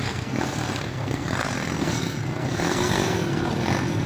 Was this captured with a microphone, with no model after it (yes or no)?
no